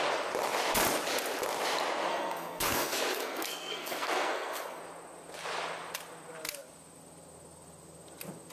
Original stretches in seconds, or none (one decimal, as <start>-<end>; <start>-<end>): 0.0-2.1; 4.8-8.5